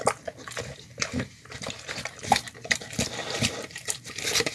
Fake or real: real